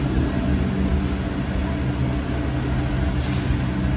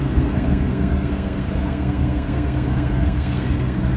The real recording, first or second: first